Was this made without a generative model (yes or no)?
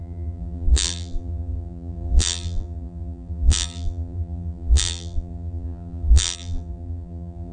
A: no